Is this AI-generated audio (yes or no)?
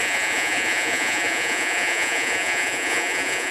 yes